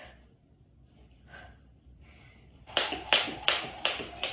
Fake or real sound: real